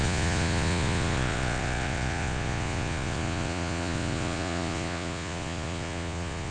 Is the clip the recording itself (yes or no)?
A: no